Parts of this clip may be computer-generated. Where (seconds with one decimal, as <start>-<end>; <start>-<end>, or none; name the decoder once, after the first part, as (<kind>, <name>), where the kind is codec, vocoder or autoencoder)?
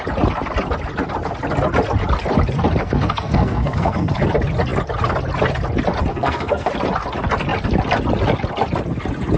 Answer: 2.8-4.1 (codec, SNAC); 6.1-6.7